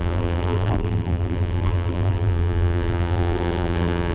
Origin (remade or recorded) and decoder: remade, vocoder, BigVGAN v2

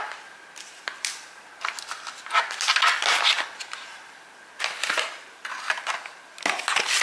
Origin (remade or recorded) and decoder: recorded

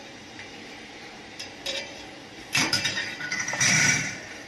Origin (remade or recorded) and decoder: remade, vocoder, BigVGAN v2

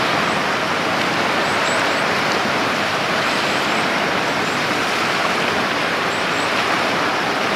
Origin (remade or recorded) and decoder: remade, vocoder, BigVGAN v2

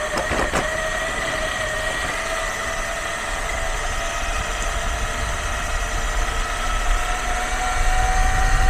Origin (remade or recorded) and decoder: recorded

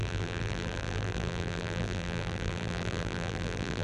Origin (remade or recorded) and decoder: remade, vocoder, BigVGAN v2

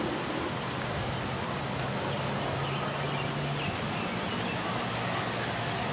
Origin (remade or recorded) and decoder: recorded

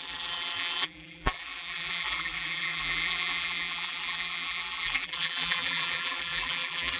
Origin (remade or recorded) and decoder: remade, vocoder, BigVGAN v2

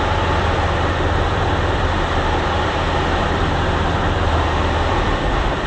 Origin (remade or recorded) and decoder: remade, vocoder, BigVGAN v2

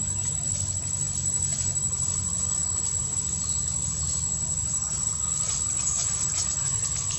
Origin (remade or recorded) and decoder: recorded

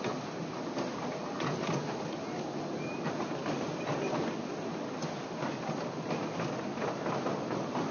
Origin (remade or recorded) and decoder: recorded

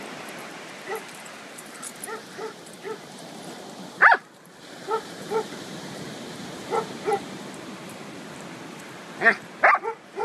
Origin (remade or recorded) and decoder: remade, vocoder, BigVGAN v2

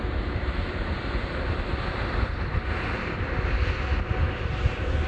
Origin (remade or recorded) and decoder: recorded